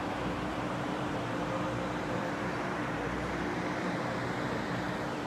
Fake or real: fake